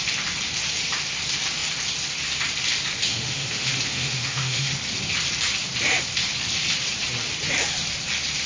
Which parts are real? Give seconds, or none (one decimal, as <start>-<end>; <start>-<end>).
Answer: 0.0-3.1; 4.7-8.5